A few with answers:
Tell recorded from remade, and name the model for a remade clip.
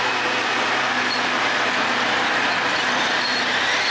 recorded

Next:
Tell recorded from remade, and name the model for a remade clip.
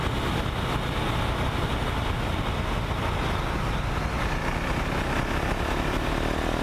recorded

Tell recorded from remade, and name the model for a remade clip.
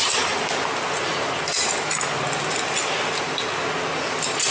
recorded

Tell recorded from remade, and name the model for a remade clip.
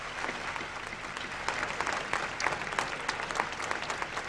recorded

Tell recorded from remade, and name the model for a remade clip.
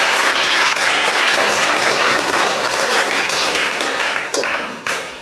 remade, codec, SNAC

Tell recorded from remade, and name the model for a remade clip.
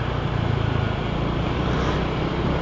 recorded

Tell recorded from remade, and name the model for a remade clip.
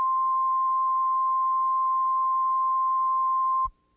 recorded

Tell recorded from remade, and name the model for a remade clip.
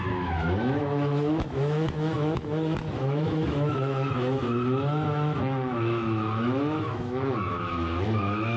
remade, autoencoder, DAC-VAE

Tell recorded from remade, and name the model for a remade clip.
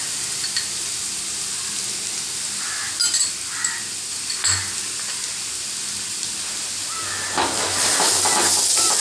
recorded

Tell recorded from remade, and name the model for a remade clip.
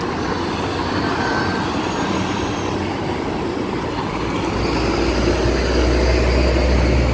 recorded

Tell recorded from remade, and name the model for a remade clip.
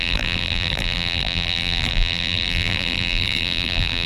remade, vocoder, BigVGAN v2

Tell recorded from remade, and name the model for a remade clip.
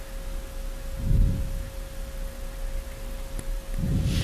recorded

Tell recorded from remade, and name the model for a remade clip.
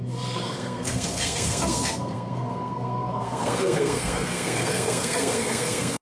remade, codec, SNAC